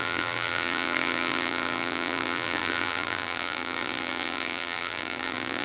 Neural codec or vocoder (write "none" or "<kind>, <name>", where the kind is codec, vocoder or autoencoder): vocoder, BigVGAN v2